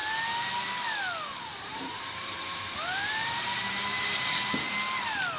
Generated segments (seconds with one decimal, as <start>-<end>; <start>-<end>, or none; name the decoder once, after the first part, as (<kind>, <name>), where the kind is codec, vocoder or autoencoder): 1.5-4.7 (vocoder, BigVGAN v2)

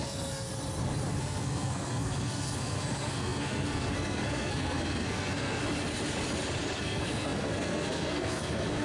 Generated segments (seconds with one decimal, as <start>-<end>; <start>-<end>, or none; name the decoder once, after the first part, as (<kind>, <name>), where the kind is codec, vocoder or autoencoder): 0.0-0.5 (codec, SNAC); 1.2-5.6; 6.8-8.8

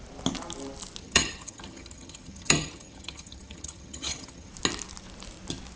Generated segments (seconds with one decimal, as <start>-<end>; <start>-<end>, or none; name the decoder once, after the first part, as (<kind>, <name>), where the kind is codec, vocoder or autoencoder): 1.0-4.5 (vocoder, HiFi-GAN)

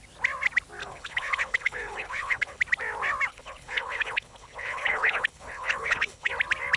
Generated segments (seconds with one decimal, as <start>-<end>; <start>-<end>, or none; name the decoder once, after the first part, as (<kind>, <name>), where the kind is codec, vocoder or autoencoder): 0.8-2.6 (codec, HILCodec); 3.3-6.3

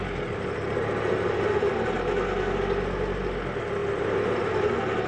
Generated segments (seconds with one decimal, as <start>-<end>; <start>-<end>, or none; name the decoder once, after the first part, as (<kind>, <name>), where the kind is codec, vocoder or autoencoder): 3.8-4.4 (vocoder, BigVGAN v2)

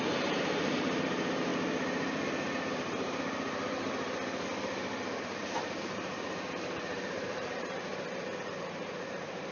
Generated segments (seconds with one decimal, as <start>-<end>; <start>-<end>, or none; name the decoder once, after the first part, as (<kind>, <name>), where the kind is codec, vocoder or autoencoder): 0.0-1.5 (vocoder, BigVGAN v2); 5.2-7.9; 8.5-9.5